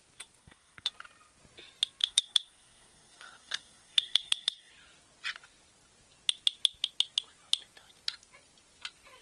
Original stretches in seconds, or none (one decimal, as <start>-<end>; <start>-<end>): 0.0-0.4; 0.9-2.0; 4.7-9.2